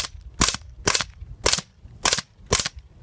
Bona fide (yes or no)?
yes